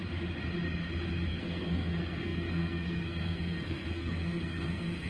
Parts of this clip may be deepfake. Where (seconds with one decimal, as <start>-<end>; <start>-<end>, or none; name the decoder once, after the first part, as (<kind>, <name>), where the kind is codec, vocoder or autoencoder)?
1.3-5.1 (codec, SNAC)

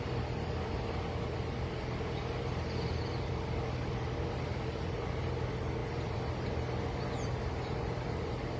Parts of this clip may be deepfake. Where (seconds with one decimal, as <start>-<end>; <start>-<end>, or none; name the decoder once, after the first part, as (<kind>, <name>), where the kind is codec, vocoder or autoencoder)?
none

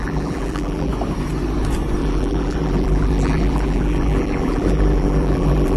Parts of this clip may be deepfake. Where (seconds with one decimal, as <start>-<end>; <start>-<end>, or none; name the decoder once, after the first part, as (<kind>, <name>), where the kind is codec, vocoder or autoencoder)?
0.0-0.9 (vocoder, BigVGAN v2); 2.0-5.8

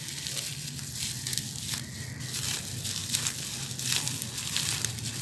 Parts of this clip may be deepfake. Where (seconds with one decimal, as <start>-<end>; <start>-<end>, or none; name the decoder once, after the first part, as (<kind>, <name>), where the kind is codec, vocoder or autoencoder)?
none

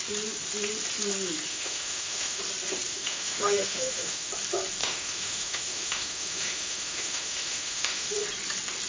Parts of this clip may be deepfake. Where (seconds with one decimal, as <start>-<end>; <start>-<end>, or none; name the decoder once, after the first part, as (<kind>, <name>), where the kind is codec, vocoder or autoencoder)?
1.5-2.4 (autoencoder, DAC-VAE); 2.9-4.3; 4.8-8.1

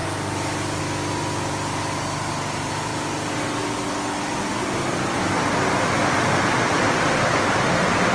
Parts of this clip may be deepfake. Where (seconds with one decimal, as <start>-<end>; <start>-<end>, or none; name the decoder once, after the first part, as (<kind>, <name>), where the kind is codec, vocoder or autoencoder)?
none

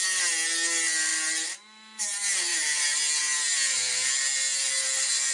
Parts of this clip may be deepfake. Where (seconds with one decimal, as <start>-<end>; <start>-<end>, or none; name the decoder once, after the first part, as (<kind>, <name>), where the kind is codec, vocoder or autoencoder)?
none

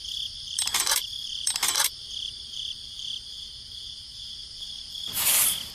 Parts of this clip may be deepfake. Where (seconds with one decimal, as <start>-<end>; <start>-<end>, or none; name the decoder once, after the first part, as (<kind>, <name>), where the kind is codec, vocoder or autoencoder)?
0.0-3.4 (vocoder, BigVGAN v2); 4.4-5.3